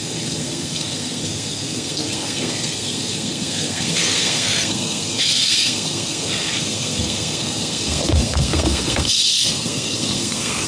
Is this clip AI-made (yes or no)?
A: yes